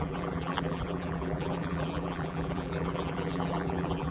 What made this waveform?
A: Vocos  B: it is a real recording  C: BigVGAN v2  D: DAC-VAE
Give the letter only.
C